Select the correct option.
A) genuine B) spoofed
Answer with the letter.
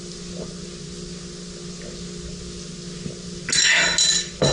A